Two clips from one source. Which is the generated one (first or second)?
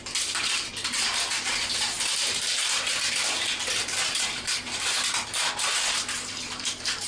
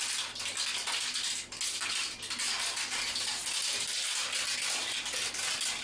first